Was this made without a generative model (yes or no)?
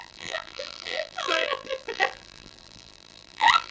no